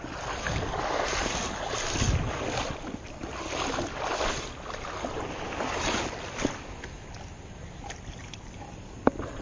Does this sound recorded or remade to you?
recorded